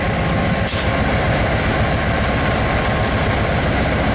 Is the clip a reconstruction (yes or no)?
no